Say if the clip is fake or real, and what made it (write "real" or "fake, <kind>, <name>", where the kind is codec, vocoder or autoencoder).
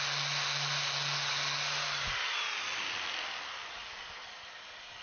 real